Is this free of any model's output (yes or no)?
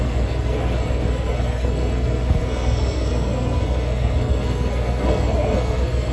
no